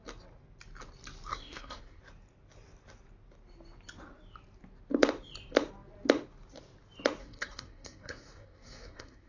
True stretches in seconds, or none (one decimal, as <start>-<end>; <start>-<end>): 0.0-1.3; 2.0-7.2